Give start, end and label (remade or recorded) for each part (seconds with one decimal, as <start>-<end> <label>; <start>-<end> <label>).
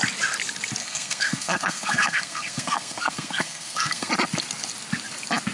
0.0-0.8 recorded; 0.8-4.1 remade; 4.1-5.5 recorded